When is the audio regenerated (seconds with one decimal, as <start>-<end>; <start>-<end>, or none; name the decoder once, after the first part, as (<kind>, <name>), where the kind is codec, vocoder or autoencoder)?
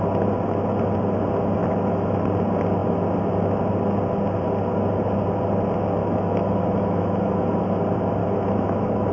1.6-2.2 (autoencoder, DAC-VAE); 6.0-7.7; 8.2-9.1